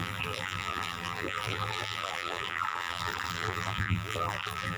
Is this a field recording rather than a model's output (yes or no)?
no